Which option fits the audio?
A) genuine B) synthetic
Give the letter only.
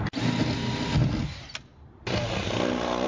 A